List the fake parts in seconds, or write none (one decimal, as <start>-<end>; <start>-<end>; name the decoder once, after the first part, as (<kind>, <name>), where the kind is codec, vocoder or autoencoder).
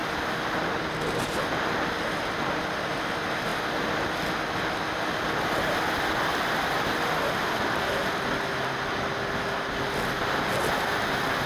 0.0-0.9 (vocoder, BigVGAN v2)